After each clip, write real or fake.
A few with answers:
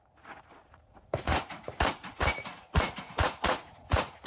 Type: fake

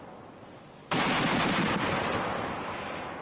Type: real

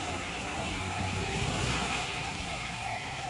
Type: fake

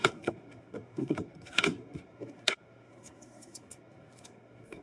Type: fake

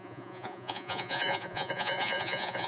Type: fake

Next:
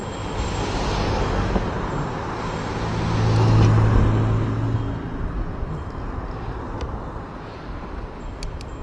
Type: real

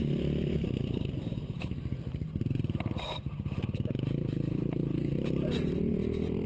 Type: real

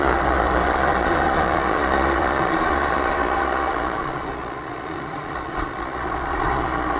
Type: fake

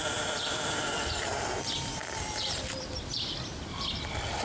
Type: fake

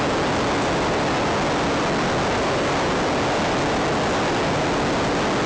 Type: real